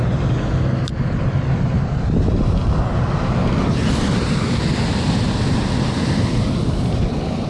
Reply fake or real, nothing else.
real